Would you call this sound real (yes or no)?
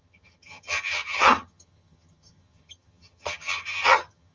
no